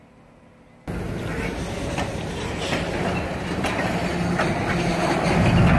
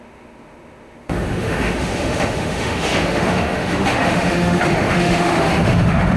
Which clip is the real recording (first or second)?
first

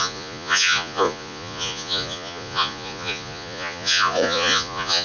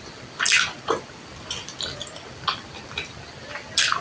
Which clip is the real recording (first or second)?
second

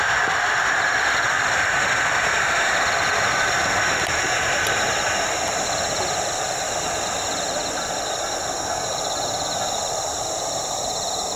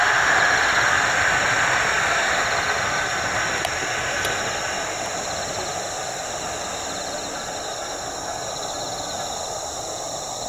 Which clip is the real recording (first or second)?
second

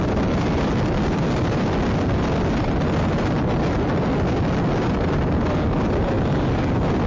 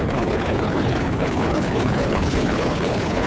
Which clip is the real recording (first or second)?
first